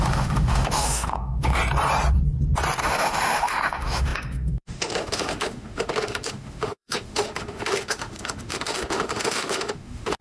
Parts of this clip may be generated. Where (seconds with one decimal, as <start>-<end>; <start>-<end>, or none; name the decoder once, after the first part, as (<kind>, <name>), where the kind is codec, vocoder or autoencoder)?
0.0-1.6 (autoencoder, DAC-VAE); 2.8-10.2